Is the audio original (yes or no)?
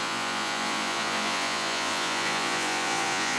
no